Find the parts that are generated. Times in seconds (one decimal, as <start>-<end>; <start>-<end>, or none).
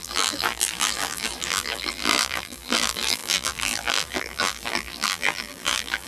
0.0-6.1